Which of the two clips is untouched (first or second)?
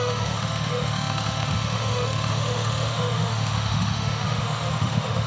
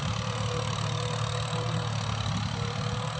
second